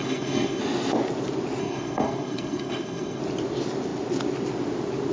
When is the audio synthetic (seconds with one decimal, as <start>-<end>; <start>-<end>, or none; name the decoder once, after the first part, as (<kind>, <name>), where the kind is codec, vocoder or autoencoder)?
0.0-0.6 (codec, SNAC); 1.6-3.2